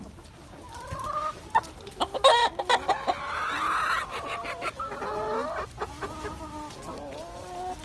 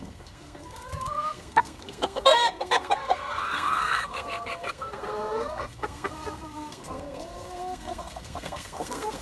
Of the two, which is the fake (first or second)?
second